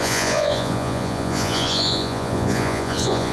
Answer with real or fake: fake